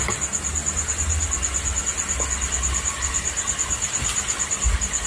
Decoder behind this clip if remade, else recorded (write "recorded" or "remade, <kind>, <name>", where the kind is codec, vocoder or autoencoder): recorded